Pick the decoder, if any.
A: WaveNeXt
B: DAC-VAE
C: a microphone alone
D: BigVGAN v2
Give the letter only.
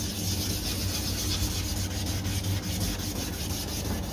C